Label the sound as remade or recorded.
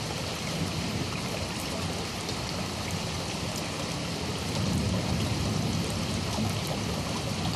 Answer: remade